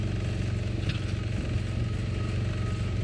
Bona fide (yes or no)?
yes